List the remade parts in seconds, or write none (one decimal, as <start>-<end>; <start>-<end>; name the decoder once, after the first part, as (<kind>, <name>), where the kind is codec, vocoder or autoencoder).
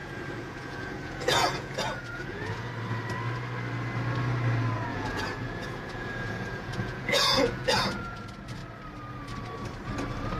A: 0.0-2.7 (vocoder, Vocos); 4.9-8.2